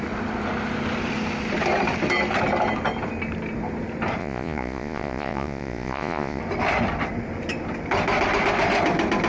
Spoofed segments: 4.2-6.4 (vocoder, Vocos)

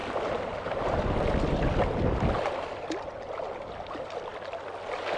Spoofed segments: none

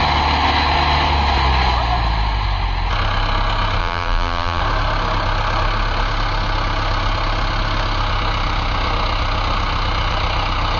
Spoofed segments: 3.8-4.6 (vocoder, BigVGAN v2)

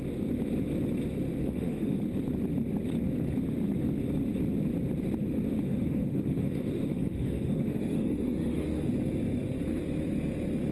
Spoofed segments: 1.4-2.0 (autoencoder, DAC-VAE); 5.6-8.9

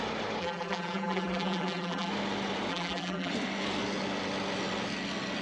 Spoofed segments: 0.4-2.1 (vocoder, BigVGAN v2); 2.7-3.3

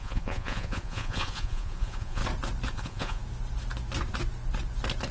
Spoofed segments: 0.0-2.2 (vocoder, Vocos); 2.7-3.2

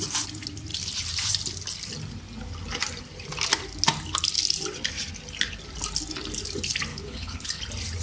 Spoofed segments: 6.9-7.6 (codec, HILCodec)

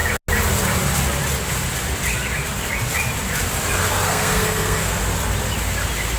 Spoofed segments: 3.9-5.0 (codec, SNAC)